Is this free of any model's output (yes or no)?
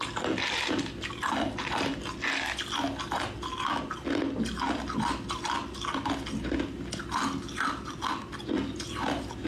yes